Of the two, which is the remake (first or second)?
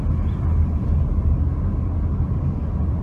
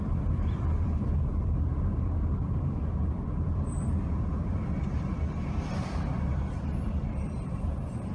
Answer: second